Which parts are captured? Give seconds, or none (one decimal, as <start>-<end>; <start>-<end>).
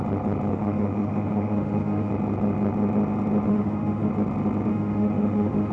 0.0-0.5; 2.1-3.5; 4.1-4.7